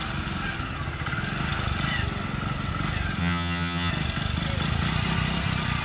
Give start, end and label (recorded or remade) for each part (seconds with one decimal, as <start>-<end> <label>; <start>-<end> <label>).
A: 0.0-3.2 recorded; 3.2-3.9 remade; 3.9-5.8 recorded